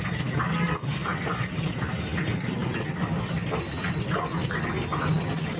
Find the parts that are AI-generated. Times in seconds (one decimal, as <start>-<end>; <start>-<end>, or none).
none